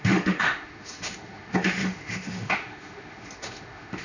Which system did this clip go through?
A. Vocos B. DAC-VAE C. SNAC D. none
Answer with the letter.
B